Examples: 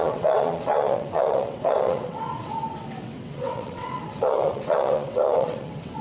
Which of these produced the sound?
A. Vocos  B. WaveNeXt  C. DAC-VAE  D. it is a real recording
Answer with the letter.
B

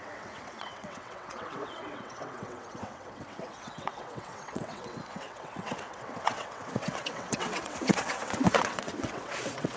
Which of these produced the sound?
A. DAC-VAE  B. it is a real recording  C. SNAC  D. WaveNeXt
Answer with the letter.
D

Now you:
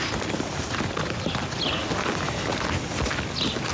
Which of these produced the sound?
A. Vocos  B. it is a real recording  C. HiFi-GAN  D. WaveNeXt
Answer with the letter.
B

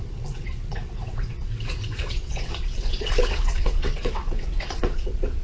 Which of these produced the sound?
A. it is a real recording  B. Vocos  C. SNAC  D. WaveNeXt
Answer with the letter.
D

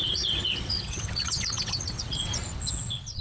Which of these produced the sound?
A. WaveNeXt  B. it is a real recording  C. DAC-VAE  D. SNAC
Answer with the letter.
A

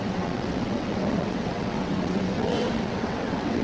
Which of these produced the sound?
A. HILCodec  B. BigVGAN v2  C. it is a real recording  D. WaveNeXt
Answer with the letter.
D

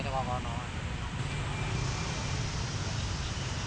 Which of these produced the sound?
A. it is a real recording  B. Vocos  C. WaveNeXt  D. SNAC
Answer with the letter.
A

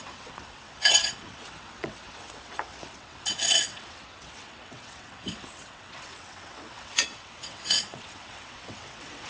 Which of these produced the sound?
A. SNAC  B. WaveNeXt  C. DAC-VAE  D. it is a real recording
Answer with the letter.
B